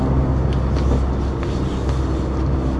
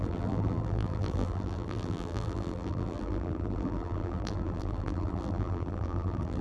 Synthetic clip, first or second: second